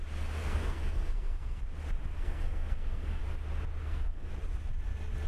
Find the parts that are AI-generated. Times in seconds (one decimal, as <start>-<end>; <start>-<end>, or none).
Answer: 0.4-1.6; 2.1-3.2; 3.8-4.3